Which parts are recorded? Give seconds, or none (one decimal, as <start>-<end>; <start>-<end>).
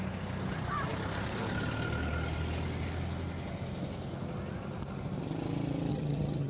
0.0-5.9